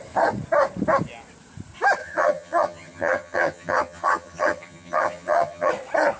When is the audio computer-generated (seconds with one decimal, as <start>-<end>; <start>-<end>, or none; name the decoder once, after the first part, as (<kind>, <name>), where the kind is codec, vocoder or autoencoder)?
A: 2.0-5.7 (vocoder, HiFi-GAN)